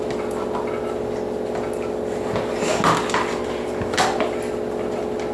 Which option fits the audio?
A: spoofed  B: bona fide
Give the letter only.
B